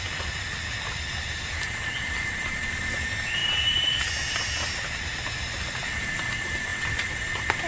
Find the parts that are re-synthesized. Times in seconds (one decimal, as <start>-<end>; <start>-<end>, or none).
3.4-4.1